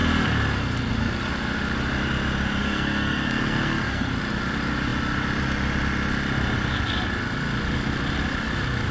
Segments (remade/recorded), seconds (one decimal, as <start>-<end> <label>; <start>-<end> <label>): 0.0-2.6 recorded; 2.6-4.1 remade; 4.1-8.9 recorded